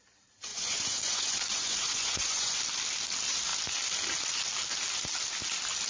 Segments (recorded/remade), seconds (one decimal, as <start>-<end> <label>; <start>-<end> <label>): 0.0-0.5 recorded; 0.5-2.6 remade; 2.6-5.9 recorded